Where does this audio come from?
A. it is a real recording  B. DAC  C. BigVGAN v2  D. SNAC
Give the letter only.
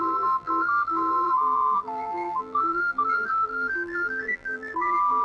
C